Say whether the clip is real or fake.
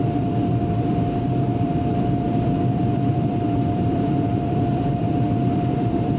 fake